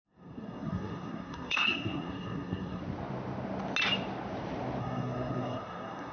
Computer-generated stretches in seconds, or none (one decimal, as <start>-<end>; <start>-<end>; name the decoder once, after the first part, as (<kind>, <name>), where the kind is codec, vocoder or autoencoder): 0.0-2.8 (codec, SNAC); 4.8-6.1